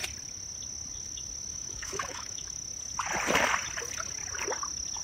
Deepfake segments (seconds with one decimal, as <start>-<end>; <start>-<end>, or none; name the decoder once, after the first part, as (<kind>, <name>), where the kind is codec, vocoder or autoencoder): 1.5-2.6 (autoencoder, DAC-VAE)